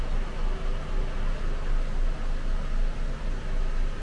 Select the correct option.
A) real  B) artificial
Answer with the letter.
A